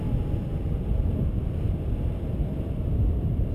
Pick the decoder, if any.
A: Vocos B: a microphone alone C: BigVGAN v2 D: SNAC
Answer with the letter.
B